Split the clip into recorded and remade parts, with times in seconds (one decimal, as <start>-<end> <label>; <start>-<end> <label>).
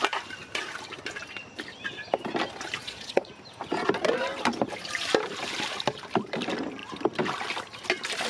0.0-2.8 recorded; 2.8-3.3 remade; 3.3-8.3 recorded